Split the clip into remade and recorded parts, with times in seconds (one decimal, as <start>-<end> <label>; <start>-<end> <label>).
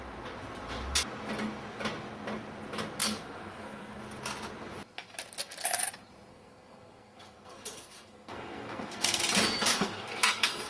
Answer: 0.0-3.0 recorded; 3.0-4.0 remade; 4.0-6.3 recorded; 6.3-9.2 remade; 9.2-9.7 recorded; 9.7-10.7 remade